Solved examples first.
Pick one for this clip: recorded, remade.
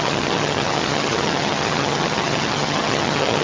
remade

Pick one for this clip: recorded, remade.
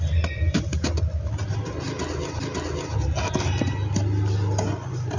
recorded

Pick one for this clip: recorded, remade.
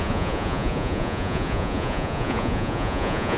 remade